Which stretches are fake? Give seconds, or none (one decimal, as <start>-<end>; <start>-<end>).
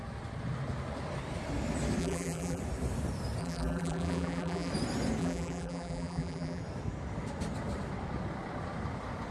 2.0-2.6; 3.4-4.7; 5.2-6.6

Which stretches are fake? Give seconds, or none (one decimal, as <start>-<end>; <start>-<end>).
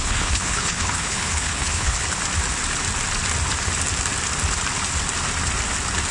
0.0-2.0